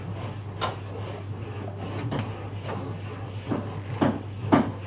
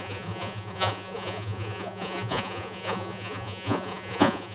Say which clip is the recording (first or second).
first